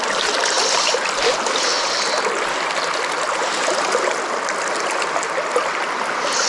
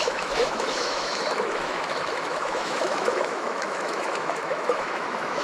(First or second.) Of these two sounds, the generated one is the second